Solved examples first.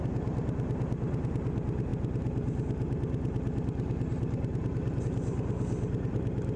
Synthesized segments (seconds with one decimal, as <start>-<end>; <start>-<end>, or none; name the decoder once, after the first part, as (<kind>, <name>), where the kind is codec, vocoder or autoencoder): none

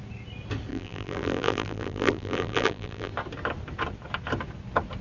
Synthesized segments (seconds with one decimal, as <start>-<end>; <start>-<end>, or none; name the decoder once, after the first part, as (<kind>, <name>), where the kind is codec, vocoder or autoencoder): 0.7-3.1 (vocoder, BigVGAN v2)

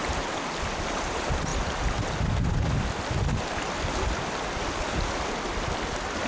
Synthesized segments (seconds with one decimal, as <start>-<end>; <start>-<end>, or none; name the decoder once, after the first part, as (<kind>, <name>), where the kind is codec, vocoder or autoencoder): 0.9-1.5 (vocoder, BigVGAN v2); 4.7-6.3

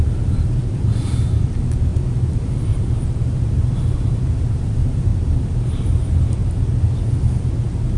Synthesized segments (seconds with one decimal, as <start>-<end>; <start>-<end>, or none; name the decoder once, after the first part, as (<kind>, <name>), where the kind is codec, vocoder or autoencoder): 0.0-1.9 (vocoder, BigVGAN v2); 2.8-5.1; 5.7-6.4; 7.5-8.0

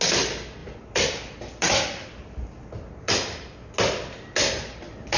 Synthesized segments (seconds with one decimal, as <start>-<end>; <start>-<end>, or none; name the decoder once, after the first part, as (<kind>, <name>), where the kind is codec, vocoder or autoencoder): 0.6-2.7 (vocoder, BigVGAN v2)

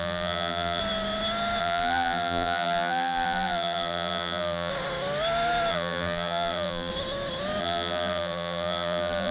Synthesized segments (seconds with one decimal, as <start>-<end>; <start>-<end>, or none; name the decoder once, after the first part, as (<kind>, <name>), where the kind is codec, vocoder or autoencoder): 0.0-0.8 (vocoder, BigVGAN v2); 1.6-4.7; 5.7-6.9; 7.6-9.3

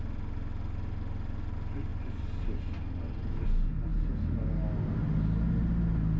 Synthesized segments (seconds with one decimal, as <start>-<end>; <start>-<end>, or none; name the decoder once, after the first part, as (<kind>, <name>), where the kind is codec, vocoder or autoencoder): 1.9-2.6 (vocoder, BigVGAN v2)